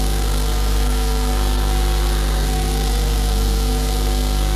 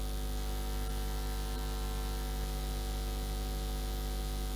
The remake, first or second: first